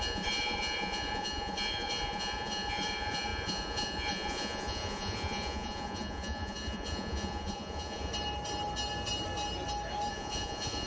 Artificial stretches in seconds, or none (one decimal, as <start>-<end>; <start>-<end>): 0.0-8.1; 10.1-10.9